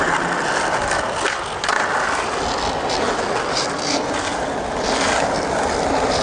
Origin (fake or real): real